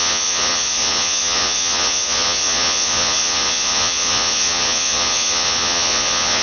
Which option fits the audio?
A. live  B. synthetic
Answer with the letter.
B